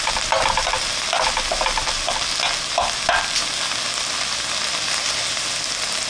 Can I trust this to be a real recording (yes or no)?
yes